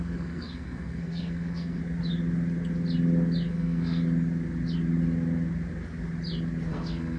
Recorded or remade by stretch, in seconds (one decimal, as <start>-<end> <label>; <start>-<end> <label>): 0.0-1.8 remade; 1.8-3.5 recorded; 3.5-4.0 remade; 4.0-6.7 recorded; 6.7-7.2 remade